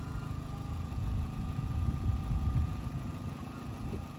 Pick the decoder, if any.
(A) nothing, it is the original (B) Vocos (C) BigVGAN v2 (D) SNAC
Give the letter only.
B